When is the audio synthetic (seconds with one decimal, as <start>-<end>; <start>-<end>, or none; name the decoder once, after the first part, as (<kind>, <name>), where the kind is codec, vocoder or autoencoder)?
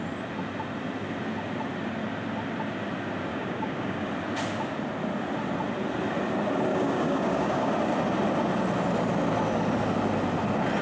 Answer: 3.3-4.1 (codec, DAC); 6.7-7.7